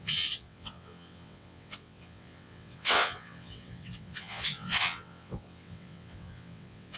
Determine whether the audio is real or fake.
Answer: fake